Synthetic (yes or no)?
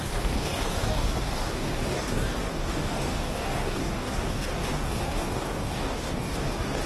yes